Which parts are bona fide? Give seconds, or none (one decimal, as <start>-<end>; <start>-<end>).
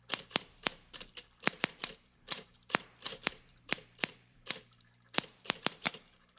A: none